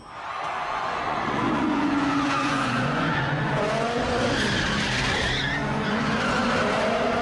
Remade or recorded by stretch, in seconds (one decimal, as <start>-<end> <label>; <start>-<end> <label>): 0.0-0.5 recorded; 0.5-4.2 remade; 4.2-5.6 recorded; 5.6-6.3 remade; 6.3-7.2 recorded

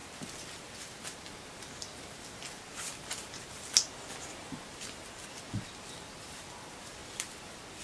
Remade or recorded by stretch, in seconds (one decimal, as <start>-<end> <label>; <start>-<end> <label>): 0.0-7.8 recorded

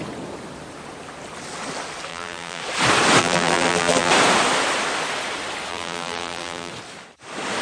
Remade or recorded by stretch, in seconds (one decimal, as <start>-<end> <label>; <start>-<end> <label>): 0.0-2.1 recorded; 2.1-2.6 remade; 2.6-3.2 recorded; 3.2-4.1 remade; 4.1-5.7 recorded; 5.7-6.7 remade; 6.7-7.6 recorded

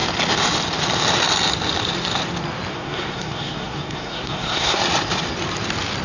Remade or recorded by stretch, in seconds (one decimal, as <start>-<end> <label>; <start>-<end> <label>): 0.0-2.7 recorded; 2.7-4.8 remade; 4.8-6.0 recorded

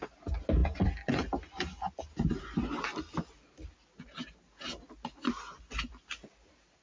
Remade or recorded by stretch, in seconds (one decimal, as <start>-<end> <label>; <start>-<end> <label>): 0.0-6.8 recorded

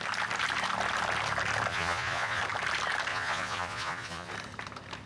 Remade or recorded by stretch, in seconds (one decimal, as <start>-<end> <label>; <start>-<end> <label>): 0.0-1.7 recorded; 1.7-2.4 remade; 2.4-3.1 recorded; 3.1-4.3 remade; 4.3-5.1 recorded

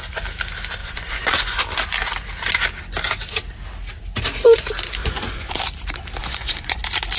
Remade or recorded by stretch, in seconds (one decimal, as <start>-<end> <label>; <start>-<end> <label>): 0.0-0.8 recorded; 0.8-1.6 remade; 1.6-5.0 recorded; 5.0-5.6 remade; 5.6-6.2 recorded; 6.2-6.8 remade; 6.8-7.2 recorded